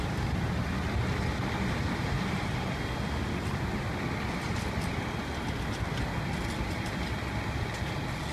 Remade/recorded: recorded